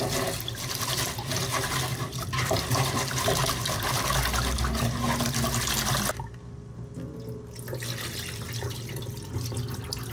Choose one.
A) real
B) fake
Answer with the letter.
A